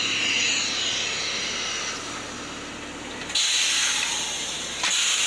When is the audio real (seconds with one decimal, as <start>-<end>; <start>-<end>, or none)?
0.0-5.3